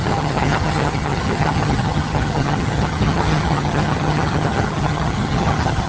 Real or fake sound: fake